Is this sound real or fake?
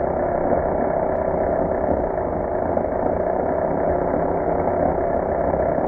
real